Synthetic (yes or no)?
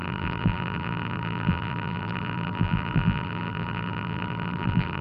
yes